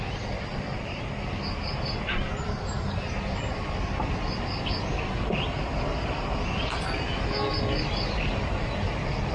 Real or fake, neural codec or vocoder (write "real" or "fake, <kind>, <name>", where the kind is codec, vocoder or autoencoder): real